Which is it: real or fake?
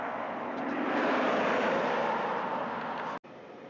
real